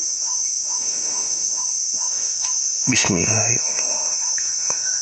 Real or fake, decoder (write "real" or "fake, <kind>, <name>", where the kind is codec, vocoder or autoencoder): fake, autoencoder, DAC-VAE